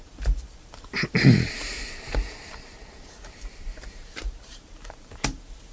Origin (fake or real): fake